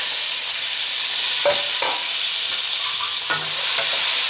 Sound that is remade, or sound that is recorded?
recorded